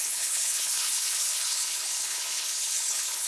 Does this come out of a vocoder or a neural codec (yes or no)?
yes